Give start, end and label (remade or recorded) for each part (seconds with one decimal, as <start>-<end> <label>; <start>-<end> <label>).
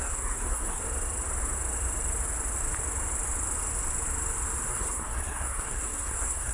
0.0-0.8 remade; 0.8-4.7 recorded; 4.7-6.5 remade